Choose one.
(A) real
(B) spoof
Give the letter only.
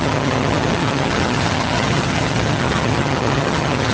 B